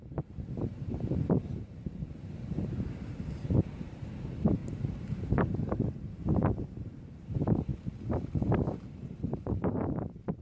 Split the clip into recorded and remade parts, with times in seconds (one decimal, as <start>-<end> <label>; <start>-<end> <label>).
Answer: 0.0-7.7 remade; 7.7-8.4 recorded; 8.4-10.4 remade